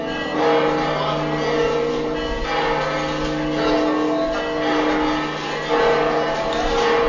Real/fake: real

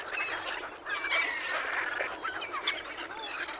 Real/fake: real